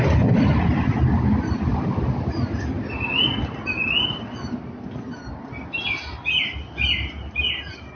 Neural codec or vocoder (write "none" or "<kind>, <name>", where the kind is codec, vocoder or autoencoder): none